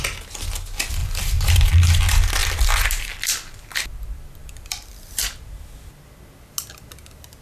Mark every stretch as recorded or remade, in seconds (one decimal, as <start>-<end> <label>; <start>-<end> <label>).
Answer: 0.0-1.0 recorded; 1.0-1.7 remade; 1.7-2.4 recorded; 2.4-5.4 remade; 5.4-7.4 recorded